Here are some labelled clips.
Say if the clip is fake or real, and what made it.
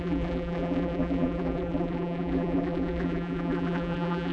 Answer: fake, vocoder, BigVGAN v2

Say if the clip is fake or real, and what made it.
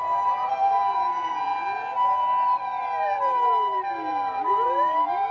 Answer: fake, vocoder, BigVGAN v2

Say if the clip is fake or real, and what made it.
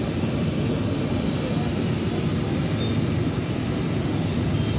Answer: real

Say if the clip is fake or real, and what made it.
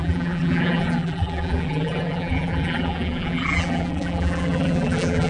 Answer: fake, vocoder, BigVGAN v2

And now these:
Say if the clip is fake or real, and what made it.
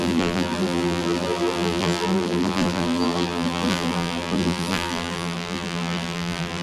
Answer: fake, vocoder, BigVGAN v2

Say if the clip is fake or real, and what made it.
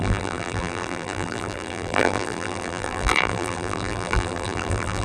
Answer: fake, vocoder, BigVGAN v2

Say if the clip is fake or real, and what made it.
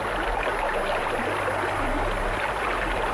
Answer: real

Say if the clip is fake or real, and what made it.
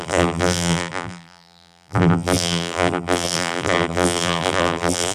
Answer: fake, vocoder, BigVGAN v2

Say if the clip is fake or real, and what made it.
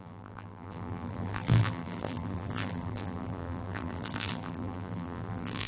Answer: fake, vocoder, BigVGAN v2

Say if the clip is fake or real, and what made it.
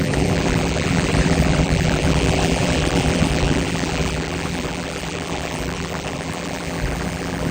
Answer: fake, vocoder, BigVGAN v2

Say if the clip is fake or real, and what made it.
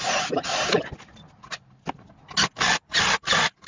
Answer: real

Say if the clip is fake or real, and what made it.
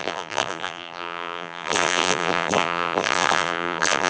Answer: fake, vocoder, BigVGAN v2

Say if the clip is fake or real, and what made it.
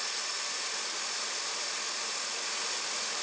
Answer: fake, vocoder, BigVGAN v2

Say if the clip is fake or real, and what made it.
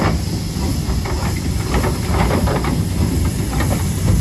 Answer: real